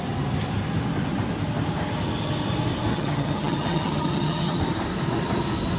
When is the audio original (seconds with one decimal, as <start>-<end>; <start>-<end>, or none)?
0.0-2.9; 4.6-5.8